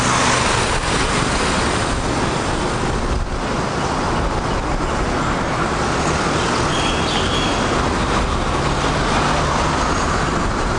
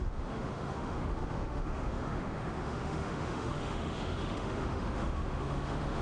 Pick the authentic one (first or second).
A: first